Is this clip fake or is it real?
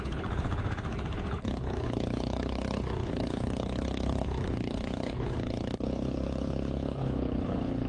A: fake